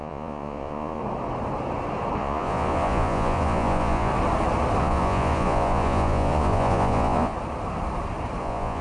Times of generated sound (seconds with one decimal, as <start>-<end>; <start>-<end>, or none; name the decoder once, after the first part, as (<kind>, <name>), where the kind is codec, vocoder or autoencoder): 0.0-1.0 (vocoder, Vocos); 2.2-4.1; 4.8-7.3; 8.4-8.8